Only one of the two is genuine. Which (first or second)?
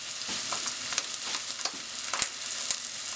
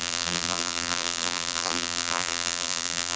first